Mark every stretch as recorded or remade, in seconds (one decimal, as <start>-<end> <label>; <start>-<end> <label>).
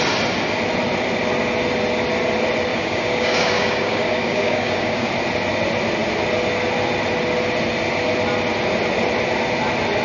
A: 0.0-2.7 recorded; 2.7-5.1 remade; 5.1-10.0 recorded